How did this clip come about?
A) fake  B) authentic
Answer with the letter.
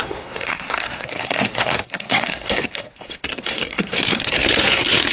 A